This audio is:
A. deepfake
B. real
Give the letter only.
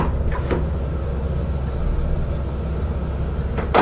B